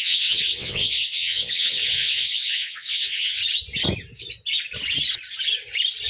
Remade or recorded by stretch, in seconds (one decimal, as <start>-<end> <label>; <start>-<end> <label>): 0.0-3.4 remade; 3.4-6.1 recorded